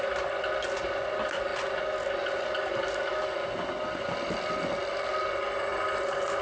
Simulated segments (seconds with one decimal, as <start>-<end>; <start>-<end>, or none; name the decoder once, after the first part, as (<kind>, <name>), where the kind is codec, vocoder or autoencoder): none